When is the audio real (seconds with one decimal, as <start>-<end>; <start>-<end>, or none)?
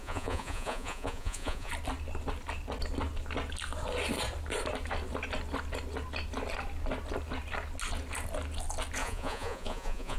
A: 1.7-9.0